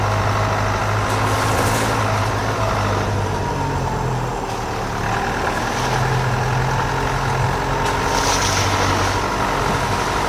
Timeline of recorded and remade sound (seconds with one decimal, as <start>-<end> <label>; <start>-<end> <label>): 0.0-10.3 recorded